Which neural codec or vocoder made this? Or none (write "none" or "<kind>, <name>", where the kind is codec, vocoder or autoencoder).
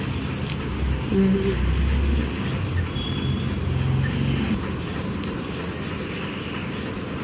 none